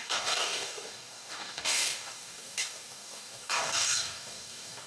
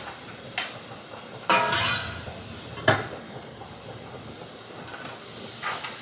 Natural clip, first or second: second